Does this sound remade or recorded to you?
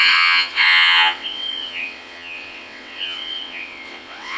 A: remade